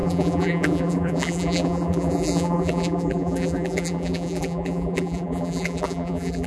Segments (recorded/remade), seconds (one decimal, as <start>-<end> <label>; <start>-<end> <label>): 0.0-6.5 remade